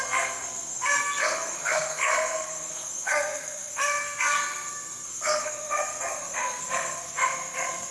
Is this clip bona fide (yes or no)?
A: no